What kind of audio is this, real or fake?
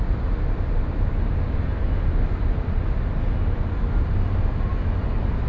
real